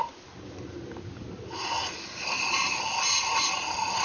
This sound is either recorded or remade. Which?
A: recorded